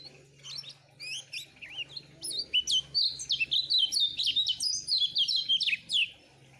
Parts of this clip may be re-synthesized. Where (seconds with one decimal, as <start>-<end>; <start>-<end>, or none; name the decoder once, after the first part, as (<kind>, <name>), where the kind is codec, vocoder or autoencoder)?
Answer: none